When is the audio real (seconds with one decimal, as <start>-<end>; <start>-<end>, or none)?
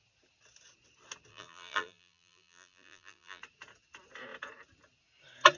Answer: 0.0-1.3; 3.4-5.6